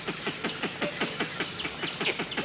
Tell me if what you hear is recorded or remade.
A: recorded